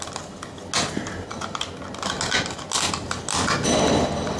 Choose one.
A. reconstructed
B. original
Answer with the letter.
B